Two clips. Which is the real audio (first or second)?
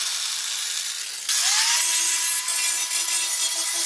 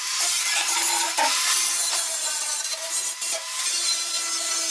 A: first